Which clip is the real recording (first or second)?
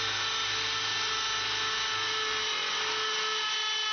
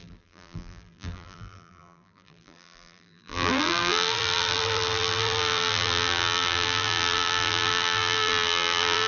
first